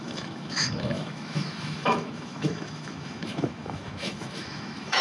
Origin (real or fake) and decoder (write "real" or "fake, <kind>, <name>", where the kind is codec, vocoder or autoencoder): fake, autoencoder, DAC-VAE